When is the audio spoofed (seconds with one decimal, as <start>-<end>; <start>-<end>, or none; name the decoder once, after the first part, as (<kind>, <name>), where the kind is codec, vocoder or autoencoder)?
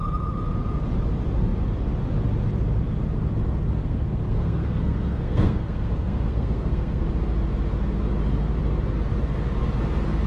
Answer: 3.8-7.1 (codec, SNAC)